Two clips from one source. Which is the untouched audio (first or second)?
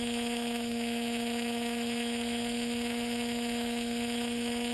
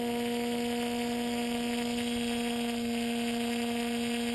second